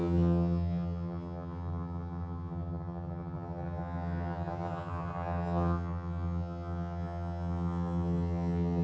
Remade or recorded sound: remade